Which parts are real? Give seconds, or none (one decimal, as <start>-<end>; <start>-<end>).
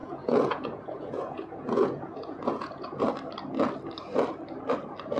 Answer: 3.1-5.2